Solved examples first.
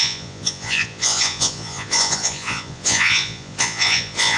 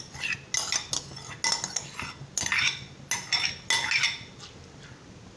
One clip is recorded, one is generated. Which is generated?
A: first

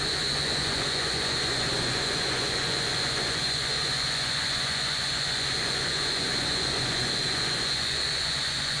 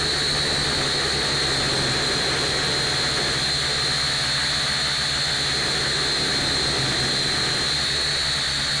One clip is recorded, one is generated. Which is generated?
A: first